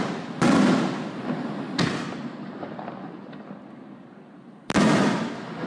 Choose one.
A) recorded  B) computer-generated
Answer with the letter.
A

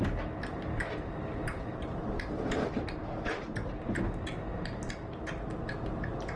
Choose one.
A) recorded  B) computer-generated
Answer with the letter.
A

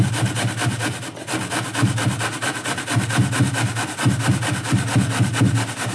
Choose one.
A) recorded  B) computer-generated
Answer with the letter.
A